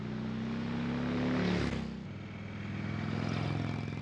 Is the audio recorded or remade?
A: recorded